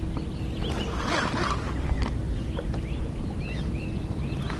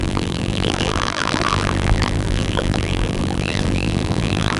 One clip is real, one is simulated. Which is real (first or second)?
first